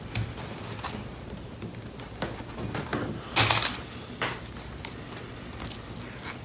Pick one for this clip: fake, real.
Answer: real